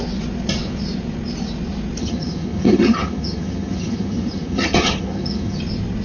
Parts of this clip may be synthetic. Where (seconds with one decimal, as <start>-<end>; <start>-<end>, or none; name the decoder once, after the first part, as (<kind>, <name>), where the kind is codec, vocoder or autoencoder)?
2.0-5.6 (vocoder, HiFi-GAN)